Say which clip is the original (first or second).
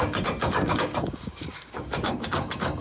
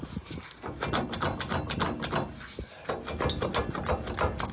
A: second